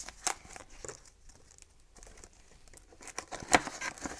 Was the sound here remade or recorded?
recorded